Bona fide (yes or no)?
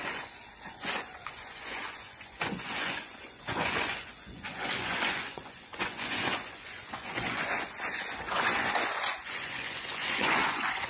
no